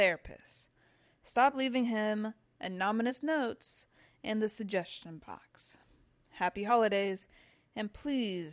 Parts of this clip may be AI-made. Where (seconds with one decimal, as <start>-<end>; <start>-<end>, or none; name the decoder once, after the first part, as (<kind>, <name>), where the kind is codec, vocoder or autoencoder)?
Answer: none